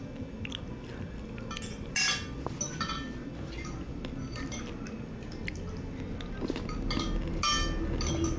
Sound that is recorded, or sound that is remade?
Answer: recorded